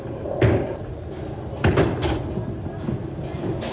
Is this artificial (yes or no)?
no